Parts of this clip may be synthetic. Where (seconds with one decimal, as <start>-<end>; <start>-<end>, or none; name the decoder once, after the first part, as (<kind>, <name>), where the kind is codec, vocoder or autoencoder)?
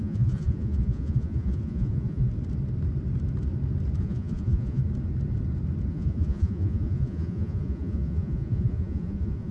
0.0-2.3 (vocoder, Vocos); 4.0-4.8; 5.9-9.5